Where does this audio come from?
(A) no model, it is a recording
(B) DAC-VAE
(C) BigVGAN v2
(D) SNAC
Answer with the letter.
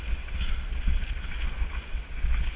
A